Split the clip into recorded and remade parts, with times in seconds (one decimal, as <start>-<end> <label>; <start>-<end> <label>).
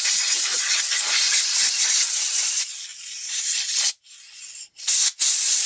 0.0-5.7 recorded